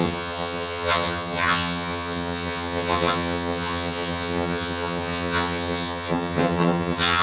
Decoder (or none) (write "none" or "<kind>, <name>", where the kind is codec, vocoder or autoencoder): vocoder, HiFi-GAN